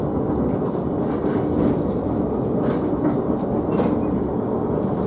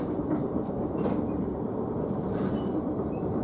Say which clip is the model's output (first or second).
second